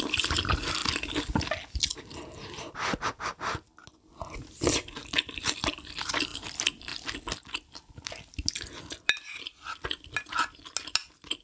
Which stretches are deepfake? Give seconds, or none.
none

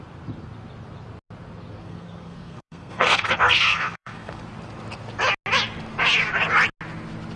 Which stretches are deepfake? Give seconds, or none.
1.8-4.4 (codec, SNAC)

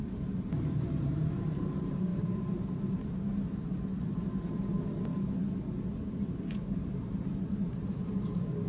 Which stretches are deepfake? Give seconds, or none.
0.0-3.1 (vocoder, BigVGAN v2); 5.9-8.7

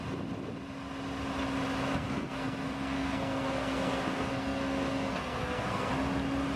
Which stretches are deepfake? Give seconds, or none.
1.9-5.9 (codec, SNAC)